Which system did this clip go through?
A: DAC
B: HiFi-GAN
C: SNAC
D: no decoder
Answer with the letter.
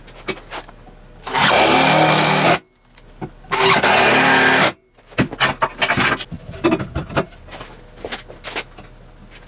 D